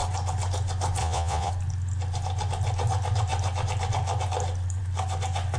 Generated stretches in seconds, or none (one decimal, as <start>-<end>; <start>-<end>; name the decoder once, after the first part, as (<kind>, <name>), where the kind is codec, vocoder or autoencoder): 1.0-1.5 (vocoder, Vocos)